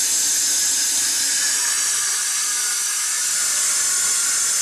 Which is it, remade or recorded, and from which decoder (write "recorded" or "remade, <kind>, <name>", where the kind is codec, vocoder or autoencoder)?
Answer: recorded